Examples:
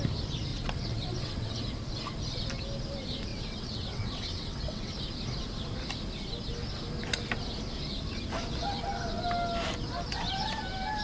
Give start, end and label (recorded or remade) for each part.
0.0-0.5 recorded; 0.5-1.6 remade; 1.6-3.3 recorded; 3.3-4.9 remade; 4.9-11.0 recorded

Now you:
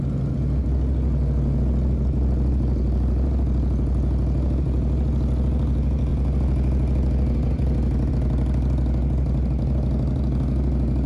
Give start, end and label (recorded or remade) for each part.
0.0-11.1 recorded

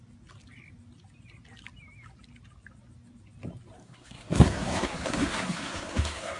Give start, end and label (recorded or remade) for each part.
0.0-3.8 recorded; 3.8-6.4 remade

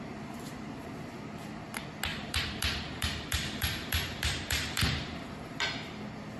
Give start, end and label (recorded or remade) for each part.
0.0-2.1 recorded; 2.1-5.6 remade; 5.6-6.4 recorded

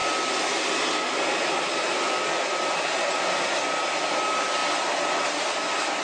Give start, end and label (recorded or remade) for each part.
0.0-6.0 recorded

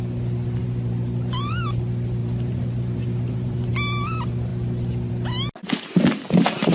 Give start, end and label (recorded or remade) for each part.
0.0-0.6 recorded; 0.6-1.5 remade; 1.5-2.2 recorded; 2.2-3.7 remade; 3.7-6.7 recorded

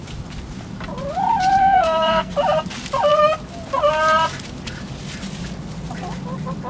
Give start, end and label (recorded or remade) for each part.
0.0-1.6 recorded; 1.6-2.3 remade; 2.3-6.7 recorded